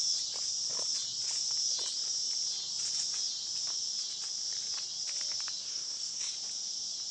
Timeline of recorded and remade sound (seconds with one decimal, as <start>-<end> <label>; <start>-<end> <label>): 0.0-5.6 recorded; 5.6-6.3 remade; 6.3-7.1 recorded